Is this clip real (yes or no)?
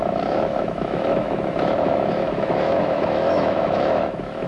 no